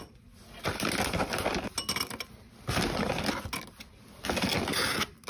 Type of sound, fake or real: real